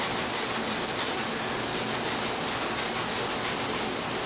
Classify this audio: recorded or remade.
recorded